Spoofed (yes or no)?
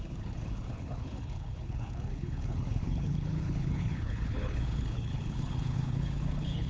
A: yes